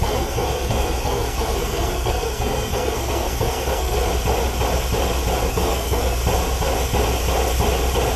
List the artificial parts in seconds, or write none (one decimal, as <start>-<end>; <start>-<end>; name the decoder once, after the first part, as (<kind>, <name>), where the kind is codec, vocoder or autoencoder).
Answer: 0.0-4.1 (codec, SNAC); 5.5-6.2